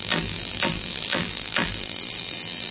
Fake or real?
fake